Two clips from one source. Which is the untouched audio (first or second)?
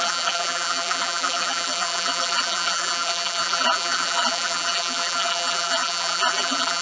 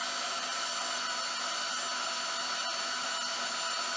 second